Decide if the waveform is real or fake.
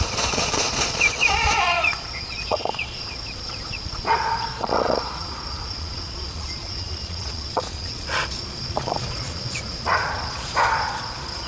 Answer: fake